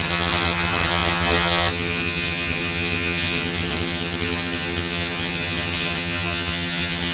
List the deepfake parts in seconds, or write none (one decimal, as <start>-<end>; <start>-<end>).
0.0-7.1